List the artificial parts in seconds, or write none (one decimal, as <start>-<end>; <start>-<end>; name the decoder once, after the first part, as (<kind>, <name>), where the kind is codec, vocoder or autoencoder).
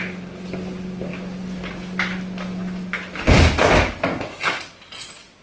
4.1-4.6 (codec, DAC)